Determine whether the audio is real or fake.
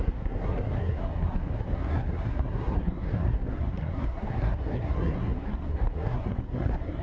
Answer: fake